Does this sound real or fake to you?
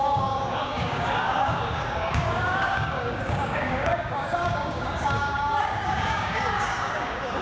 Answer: fake